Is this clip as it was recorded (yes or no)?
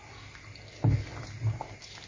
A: yes